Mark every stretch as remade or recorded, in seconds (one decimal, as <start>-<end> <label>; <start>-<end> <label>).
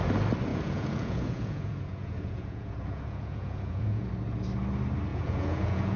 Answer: 0.0-0.5 recorded; 0.5-4.1 remade; 4.1-5.1 recorded; 5.1-6.0 remade